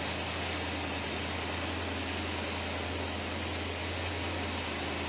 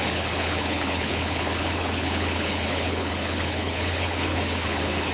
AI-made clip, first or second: second